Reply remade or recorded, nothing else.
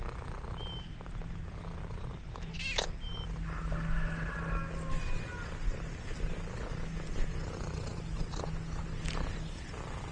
recorded